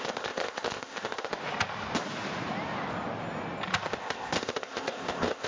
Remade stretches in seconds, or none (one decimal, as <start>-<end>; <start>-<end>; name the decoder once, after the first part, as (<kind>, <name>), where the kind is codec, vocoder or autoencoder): 0.0-1.3 (codec, ZipCodec); 4.0-5.5